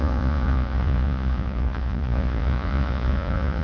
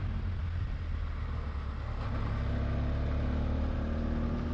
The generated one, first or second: first